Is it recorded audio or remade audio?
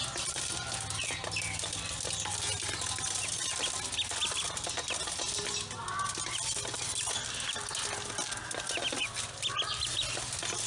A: recorded